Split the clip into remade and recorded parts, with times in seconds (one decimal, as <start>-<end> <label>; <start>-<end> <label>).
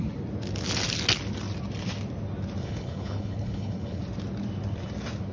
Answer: 0.0-2.6 recorded; 2.6-4.0 remade; 4.0-5.3 recorded